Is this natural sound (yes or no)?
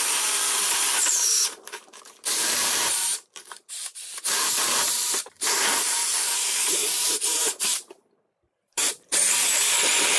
no